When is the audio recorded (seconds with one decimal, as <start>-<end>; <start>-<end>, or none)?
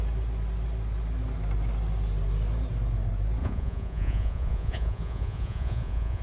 0.0-3.4